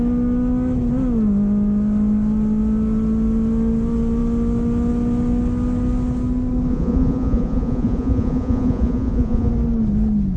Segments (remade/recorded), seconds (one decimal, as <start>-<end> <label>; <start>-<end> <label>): 0.0-6.7 recorded; 6.7-9.5 remade; 9.5-10.4 recorded